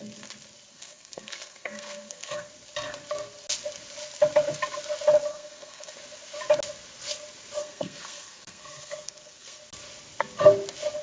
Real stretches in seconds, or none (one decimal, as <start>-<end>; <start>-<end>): 0.0-0.7; 2.5-5.3; 6.0-7.6; 9.6-11.0

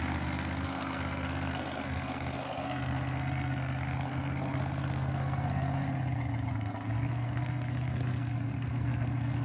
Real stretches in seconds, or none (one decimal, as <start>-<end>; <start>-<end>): 5.8-6.5

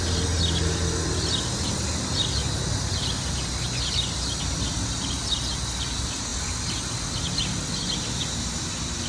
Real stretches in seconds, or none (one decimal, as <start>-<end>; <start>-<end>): 0.0-9.1

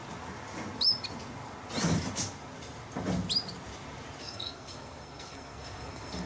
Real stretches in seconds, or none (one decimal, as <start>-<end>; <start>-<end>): 0.0-4.2

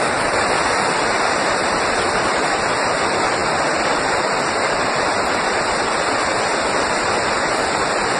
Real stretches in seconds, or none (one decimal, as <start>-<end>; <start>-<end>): 0.0-8.2